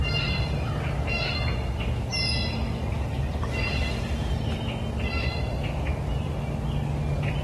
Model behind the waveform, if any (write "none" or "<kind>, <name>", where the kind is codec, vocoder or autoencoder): none